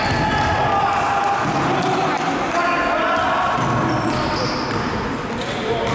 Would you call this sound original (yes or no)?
yes